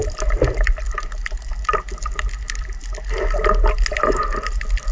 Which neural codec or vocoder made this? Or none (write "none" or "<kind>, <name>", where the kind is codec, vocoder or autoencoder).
none